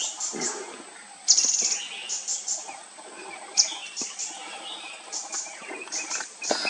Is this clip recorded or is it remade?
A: recorded